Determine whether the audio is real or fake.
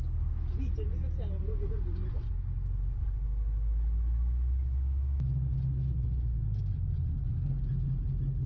real